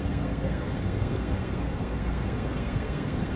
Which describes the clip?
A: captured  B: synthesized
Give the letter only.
B